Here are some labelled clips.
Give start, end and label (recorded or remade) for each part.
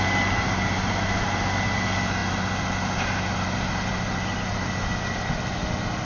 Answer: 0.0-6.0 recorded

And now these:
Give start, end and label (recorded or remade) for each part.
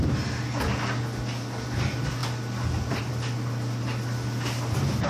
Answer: 0.0-5.1 recorded